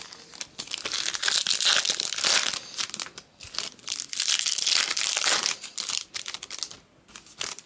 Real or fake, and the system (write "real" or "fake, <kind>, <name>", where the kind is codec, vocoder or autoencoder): real